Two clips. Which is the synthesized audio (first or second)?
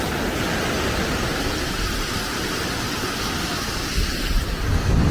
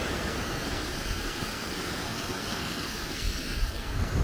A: second